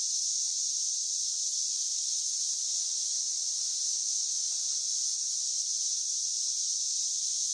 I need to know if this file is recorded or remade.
recorded